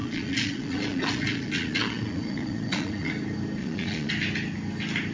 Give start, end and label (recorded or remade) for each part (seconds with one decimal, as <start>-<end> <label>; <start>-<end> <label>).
0.0-3.1 remade; 3.1-3.6 recorded; 3.6-4.1 remade; 4.1-5.1 recorded